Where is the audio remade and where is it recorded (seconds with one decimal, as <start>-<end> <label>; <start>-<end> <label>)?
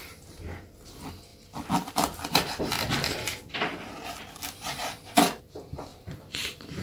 0.0-5.9 recorded; 5.9-6.8 remade